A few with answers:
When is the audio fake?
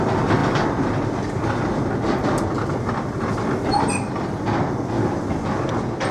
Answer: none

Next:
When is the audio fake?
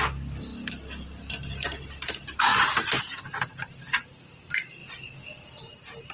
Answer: 0.5-2.1; 2.5-3.7; 4.8-5.6